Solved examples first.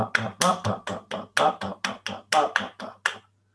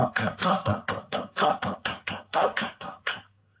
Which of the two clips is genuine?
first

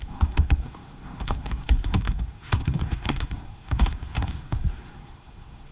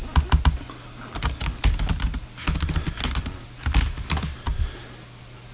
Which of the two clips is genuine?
second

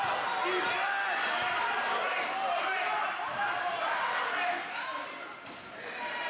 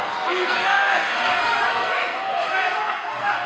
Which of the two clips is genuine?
first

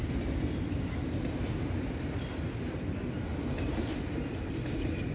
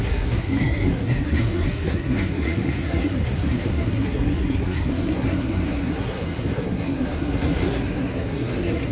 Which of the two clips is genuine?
first